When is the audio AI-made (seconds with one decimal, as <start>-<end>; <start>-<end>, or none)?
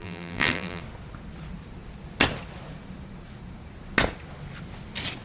0.0-0.8